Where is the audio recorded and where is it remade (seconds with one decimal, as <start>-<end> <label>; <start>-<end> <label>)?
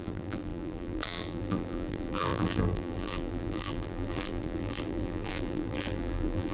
0.0-6.5 remade